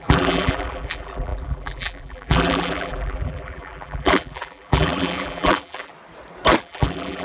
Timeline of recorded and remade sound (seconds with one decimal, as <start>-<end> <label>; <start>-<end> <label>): 0.0-5.9 remade; 5.9-6.6 recorded; 6.6-7.2 remade